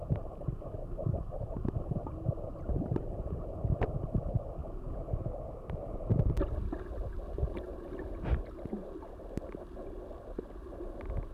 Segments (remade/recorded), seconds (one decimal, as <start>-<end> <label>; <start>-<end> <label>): 0.0-11.3 recorded